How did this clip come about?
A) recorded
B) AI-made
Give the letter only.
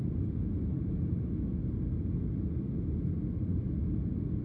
A